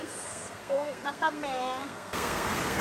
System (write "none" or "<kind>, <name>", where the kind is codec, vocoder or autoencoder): codec, SNAC